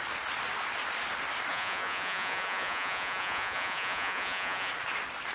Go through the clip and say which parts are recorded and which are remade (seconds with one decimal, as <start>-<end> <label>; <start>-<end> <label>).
0.0-1.5 recorded; 1.5-4.7 remade; 4.7-5.3 recorded